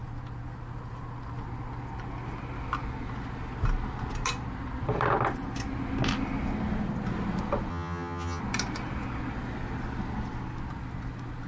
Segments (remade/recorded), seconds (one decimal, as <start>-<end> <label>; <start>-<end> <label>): 0.0-7.7 recorded; 7.7-8.4 remade; 8.4-11.5 recorded

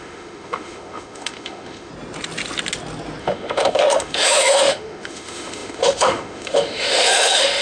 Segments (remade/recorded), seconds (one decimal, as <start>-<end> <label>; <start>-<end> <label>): 0.0-1.9 remade; 1.9-3.2 recorded; 3.2-7.6 remade

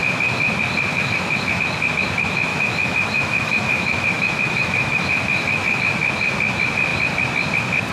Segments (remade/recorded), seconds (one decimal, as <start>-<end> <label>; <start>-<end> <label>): 0.0-0.5 remade; 0.5-0.9 recorded; 0.9-1.6 remade; 1.6-2.5 recorded; 2.5-5.8 remade; 5.8-7.9 recorded

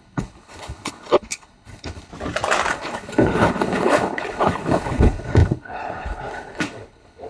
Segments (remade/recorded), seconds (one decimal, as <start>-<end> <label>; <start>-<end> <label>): 0.0-2.1 remade; 2.1-2.7 recorded; 2.7-7.3 remade